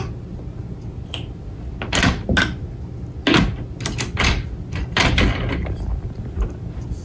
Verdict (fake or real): real